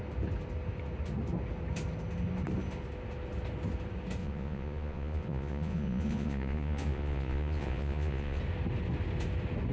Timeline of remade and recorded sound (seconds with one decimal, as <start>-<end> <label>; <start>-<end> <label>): 0.0-4.2 recorded; 4.2-8.4 remade; 8.4-9.7 recorded